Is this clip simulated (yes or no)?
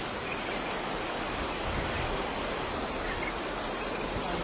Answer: no